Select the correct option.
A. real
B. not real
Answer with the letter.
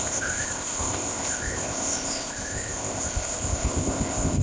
B